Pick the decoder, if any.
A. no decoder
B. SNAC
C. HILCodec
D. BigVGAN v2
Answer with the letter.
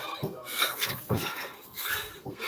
B